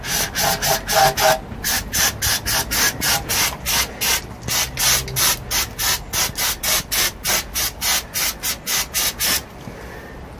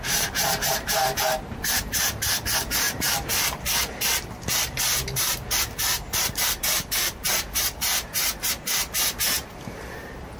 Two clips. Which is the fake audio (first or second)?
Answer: second